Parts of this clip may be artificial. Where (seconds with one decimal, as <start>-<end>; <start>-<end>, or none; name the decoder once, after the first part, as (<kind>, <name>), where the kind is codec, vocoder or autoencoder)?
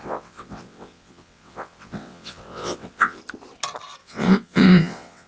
0.0-3.2 (vocoder, WaveNeXt); 4.0-5.3